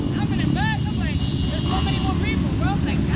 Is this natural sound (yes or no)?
yes